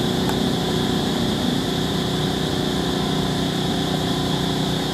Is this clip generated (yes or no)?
yes